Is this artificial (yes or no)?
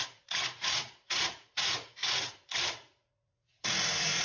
yes